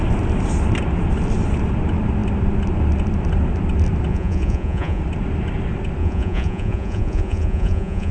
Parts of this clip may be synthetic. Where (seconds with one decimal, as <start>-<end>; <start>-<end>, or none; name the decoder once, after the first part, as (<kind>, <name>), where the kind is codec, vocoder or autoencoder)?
4.1-5.0 (vocoder, Vocos); 6.0-8.1